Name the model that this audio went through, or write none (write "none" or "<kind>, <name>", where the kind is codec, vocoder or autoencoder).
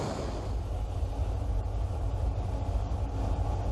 none